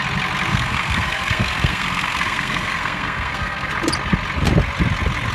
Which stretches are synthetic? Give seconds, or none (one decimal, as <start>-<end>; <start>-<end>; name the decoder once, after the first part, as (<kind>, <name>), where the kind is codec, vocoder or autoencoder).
0.5-3.7 (codec, SNAC)